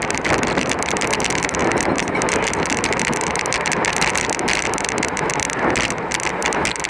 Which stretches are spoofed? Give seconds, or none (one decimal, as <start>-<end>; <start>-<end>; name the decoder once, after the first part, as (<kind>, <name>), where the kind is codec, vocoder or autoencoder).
none